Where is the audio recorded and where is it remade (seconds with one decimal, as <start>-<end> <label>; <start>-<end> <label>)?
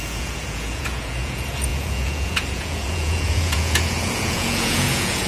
0.0-5.3 remade